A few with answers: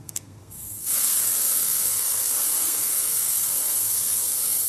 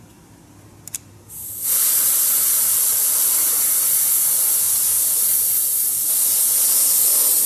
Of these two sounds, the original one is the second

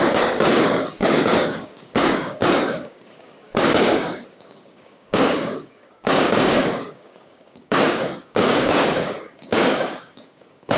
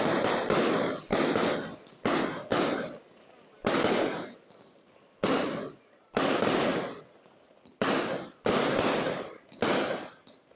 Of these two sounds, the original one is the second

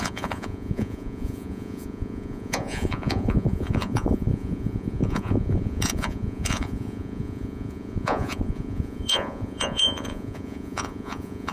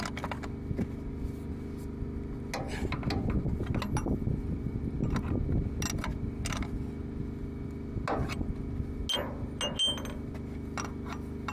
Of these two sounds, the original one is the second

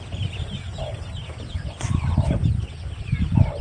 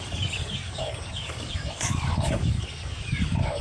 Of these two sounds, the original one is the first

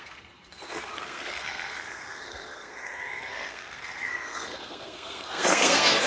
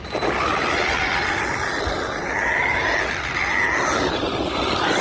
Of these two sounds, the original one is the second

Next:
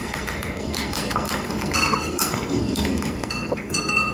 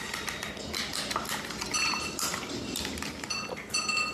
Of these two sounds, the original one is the second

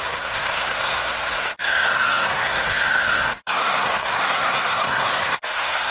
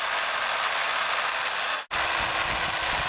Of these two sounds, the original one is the second